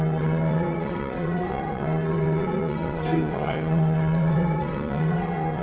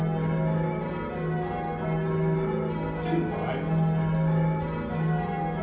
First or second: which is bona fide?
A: second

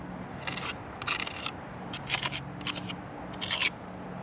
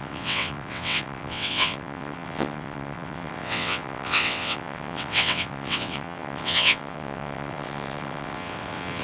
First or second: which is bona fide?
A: first